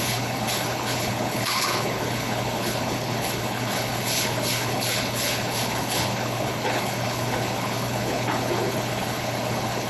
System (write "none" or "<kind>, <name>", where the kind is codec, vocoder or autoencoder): codec, HILCodec